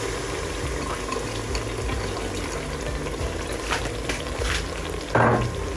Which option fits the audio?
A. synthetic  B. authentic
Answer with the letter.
B